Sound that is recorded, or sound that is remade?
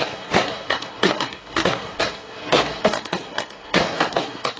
remade